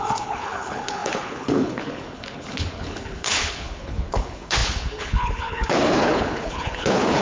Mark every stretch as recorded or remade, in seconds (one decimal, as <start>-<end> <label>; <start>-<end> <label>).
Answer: 0.0-7.2 remade